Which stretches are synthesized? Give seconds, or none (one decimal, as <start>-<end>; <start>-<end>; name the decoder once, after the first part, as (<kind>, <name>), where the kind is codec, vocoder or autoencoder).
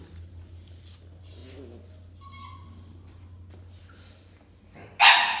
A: none